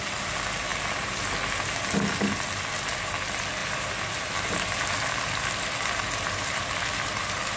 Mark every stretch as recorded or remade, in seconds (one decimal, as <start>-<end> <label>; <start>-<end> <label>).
0.0-7.6 recorded